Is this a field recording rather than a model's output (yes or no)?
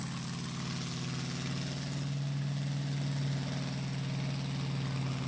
yes